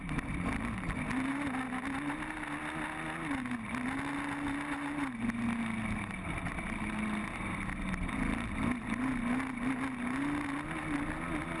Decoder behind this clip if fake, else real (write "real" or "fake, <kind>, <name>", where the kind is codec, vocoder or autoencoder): real